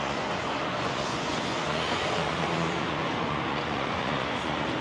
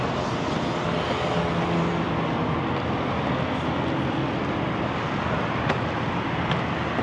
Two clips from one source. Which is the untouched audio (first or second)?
second